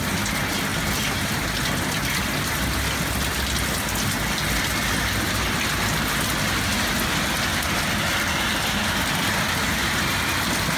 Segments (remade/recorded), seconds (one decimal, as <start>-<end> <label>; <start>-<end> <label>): 0.0-0.7 recorded; 0.7-1.4 remade; 1.4-10.8 recorded